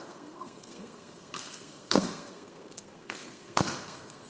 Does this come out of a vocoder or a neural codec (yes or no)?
yes